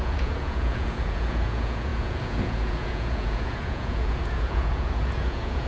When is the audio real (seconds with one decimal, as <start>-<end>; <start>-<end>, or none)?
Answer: none